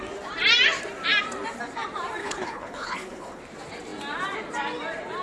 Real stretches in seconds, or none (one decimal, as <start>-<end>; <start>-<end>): 0.0-2.2; 3.4-5.2